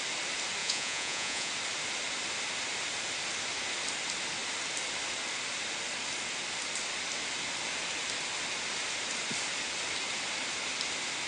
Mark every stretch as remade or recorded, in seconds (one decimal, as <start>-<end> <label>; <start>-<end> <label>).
0.0-0.6 recorded; 0.6-1.5 remade; 1.5-11.3 recorded